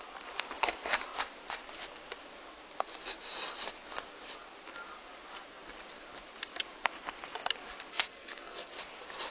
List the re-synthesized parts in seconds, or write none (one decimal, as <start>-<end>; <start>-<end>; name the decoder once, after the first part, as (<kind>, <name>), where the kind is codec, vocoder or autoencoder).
7.9-8.8 (codec, SNAC)